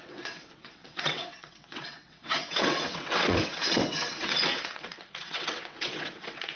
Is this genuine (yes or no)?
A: no